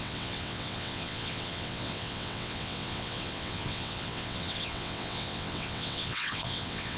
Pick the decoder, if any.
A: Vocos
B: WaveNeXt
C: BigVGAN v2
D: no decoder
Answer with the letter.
B